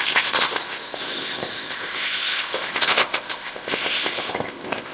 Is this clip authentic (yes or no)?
no